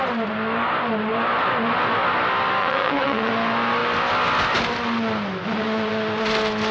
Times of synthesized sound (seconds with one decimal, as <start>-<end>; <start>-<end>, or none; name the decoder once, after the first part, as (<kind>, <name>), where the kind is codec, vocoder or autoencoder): 2.6-3.3 (vocoder, WaveNeXt)